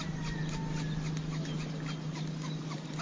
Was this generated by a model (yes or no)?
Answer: no